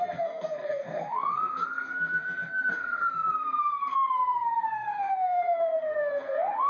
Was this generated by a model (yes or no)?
yes